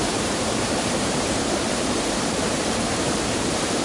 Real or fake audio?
fake